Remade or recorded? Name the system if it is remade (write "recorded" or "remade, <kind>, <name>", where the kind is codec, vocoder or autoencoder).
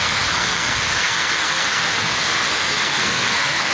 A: remade, codec, SNAC